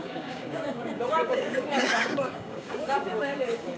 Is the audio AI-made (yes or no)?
yes